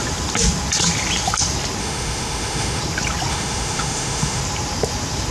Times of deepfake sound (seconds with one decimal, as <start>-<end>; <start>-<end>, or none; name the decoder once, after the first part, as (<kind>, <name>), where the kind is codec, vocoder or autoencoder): 1.8-2.8 (autoencoder, DAC-VAE); 3.3-4.4